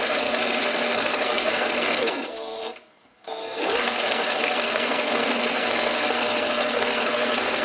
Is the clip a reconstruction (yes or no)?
yes